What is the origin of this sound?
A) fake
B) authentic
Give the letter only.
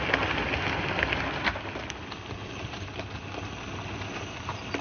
B